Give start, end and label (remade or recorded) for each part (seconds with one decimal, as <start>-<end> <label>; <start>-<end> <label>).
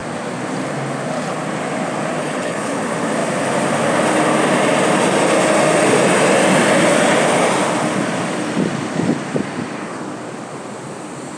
0.0-2.2 recorded; 2.2-2.8 remade; 2.8-11.4 recorded